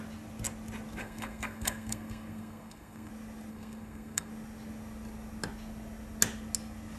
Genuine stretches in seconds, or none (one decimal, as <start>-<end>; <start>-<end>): 0.0-1.0; 3.1-3.5; 4.3-7.0